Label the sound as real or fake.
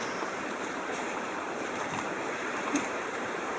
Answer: fake